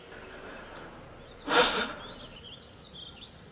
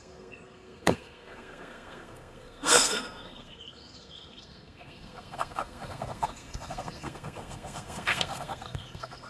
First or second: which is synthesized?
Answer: second